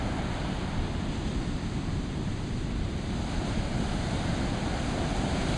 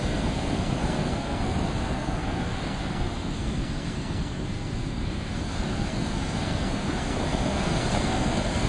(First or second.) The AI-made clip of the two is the second